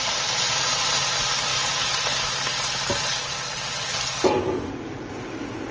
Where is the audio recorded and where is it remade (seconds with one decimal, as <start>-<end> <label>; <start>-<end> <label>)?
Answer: 0.0-5.7 recorded